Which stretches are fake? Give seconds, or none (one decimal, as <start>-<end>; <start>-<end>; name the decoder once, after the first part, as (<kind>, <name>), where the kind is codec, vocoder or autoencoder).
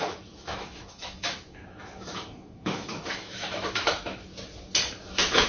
0.0-4.3 (autoencoder, DAC-VAE); 5.0-5.5